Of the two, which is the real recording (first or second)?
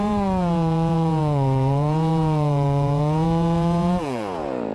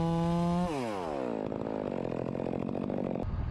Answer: second